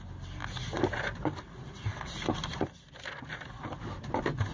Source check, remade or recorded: recorded